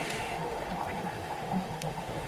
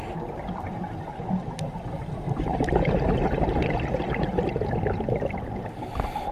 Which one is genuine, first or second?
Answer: second